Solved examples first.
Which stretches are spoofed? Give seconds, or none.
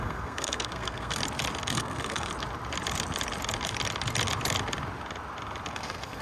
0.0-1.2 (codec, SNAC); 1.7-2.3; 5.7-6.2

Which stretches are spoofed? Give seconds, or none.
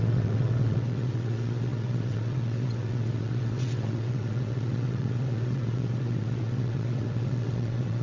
0.0-8.0 (vocoder, WaveNeXt)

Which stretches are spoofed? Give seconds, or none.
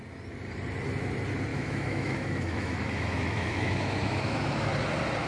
1.5-4.7 (autoencoder, DAC-VAE)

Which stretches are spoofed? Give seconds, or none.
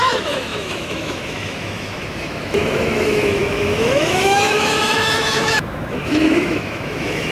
0.0-7.3 (autoencoder, DAC-VAE)